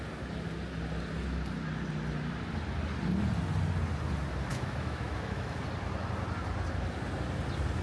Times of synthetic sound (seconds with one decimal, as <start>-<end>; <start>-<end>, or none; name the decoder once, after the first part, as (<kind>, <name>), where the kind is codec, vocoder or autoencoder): 4.5-5.6 (autoencoder, DAC-VAE)